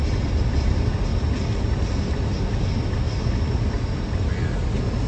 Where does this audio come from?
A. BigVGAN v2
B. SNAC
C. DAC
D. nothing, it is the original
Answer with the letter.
D